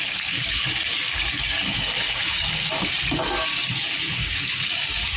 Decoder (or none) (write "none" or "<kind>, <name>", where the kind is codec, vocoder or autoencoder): codec, DAC